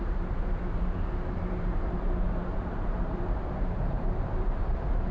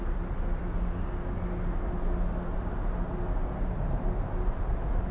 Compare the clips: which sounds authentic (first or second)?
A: second